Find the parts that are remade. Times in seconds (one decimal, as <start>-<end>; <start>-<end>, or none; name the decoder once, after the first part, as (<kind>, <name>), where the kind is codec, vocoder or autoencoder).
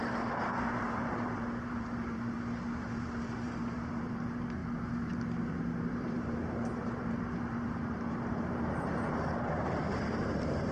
0.0-4.6 (vocoder, BigVGAN v2); 5.5-10.7